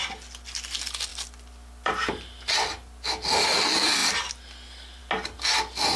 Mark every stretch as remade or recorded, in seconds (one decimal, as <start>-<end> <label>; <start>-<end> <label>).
0.0-6.0 recorded